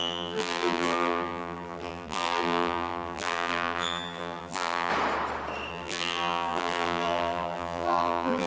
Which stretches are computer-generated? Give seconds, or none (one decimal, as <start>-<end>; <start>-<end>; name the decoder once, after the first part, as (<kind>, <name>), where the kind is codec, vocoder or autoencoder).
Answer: 0.0-4.9 (vocoder, BigVGAN v2); 5.7-8.5